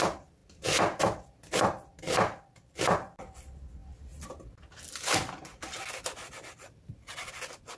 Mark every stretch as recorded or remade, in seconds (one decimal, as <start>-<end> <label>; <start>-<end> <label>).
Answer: 0.0-7.8 recorded